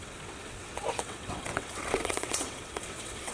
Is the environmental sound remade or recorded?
remade